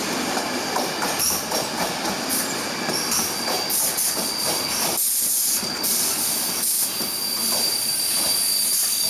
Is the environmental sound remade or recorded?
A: recorded